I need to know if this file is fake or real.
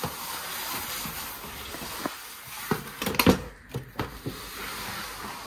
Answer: real